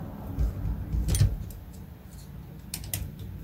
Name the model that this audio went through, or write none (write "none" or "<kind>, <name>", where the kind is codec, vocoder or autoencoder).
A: none